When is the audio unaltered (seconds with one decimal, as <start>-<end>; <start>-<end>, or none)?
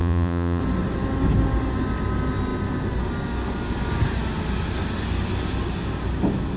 0.6-6.6